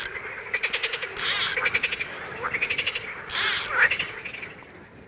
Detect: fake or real real